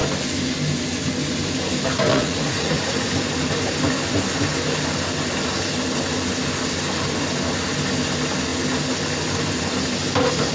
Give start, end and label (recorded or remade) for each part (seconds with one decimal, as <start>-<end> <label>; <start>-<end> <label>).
0.0-2.1 recorded; 2.1-3.1 remade; 3.1-10.5 recorded